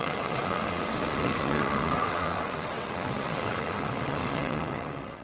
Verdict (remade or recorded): remade